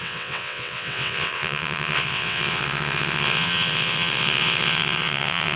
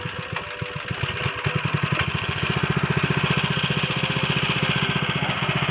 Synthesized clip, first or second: first